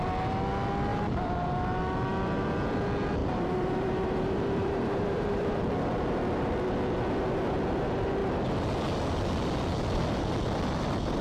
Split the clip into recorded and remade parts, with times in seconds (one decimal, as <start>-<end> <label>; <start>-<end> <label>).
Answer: 0.0-0.9 recorded; 0.9-1.8 remade; 1.8-3.2 recorded; 3.2-5.6 remade; 5.6-11.2 recorded